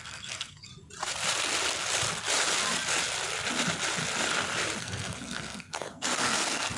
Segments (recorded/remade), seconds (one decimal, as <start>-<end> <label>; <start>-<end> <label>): 0.0-0.7 remade; 0.7-4.8 recorded; 4.8-6.8 remade